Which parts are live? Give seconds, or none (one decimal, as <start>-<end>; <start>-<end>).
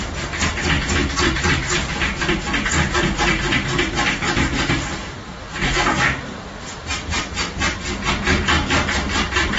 0.0-9.6